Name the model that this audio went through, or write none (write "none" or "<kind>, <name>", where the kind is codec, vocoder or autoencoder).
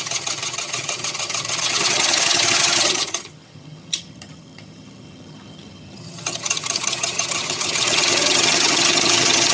vocoder, HiFi-GAN